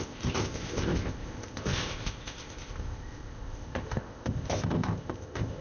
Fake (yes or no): yes